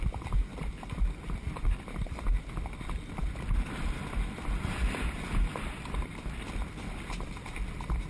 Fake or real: real